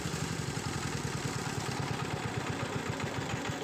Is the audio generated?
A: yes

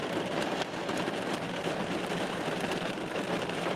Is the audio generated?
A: yes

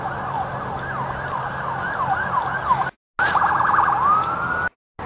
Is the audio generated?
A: no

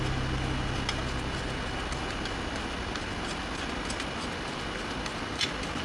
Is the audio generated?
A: no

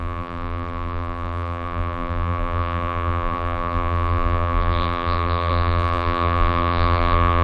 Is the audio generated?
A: yes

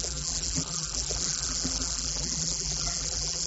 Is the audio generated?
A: yes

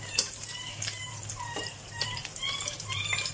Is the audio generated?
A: yes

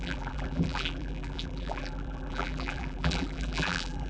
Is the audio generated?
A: yes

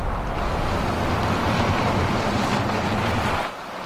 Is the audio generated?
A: no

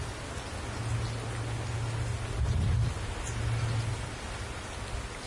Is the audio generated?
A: no